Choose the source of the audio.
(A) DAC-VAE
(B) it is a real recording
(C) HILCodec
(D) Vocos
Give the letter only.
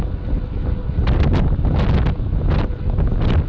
B